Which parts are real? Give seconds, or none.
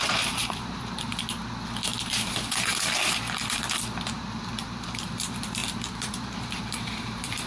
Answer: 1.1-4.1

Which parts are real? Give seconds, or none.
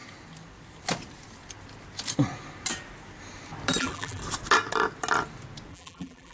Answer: 0.0-3.8; 4.2-5.7